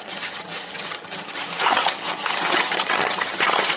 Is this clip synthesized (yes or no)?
yes